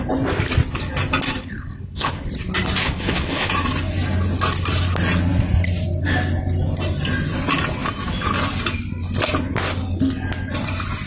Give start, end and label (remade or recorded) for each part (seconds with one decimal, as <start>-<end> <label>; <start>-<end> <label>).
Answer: 0.0-1.4 recorded; 1.4-2.3 remade; 2.3-2.8 recorded; 2.8-3.5 remade; 3.5-11.1 recorded